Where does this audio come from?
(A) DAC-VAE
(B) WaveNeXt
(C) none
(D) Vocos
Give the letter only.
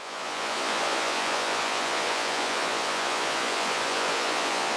D